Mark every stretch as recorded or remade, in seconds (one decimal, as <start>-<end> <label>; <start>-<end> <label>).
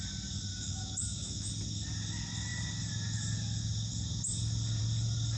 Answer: 0.0-0.5 recorded; 0.5-1.5 remade; 1.5-5.4 recorded